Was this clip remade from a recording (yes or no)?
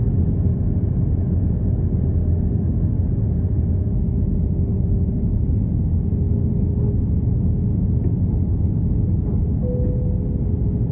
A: no